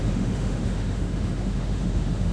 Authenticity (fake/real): fake